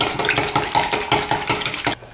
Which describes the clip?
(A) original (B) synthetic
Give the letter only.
A